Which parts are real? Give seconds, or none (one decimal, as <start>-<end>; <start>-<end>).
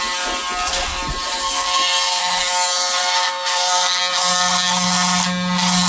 0.0-1.4; 2.2-3.0; 4.0-5.9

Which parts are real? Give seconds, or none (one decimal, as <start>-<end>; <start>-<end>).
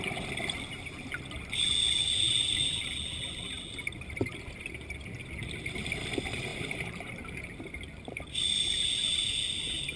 0.0-6.5; 8.2-10.0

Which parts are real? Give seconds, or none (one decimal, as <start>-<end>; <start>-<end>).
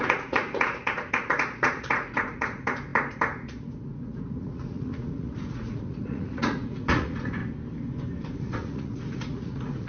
7.4-8.4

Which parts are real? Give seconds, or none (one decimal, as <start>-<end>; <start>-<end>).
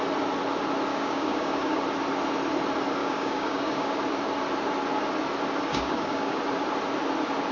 0.0-0.9; 1.8-3.0; 4.0-5.7; 6.4-7.5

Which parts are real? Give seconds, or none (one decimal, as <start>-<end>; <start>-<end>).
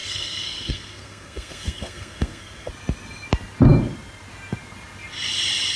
2.7-5.8